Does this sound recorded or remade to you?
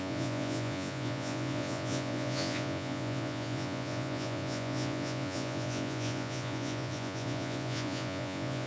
remade